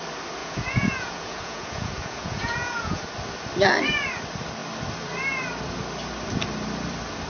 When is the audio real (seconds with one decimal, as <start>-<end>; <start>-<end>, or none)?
0.0-0.4; 3.0-7.3